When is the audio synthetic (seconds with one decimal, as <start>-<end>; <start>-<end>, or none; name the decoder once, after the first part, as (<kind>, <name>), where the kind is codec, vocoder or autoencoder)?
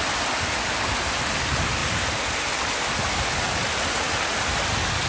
none